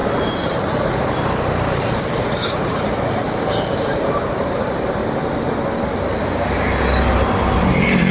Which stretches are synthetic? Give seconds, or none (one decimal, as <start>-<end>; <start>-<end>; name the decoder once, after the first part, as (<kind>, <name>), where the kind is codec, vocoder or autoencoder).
0.0-5.0 (vocoder, BigVGAN v2); 7.6-8.1